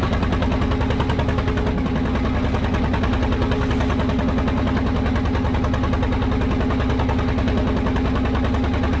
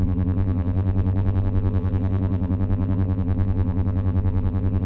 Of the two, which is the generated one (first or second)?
second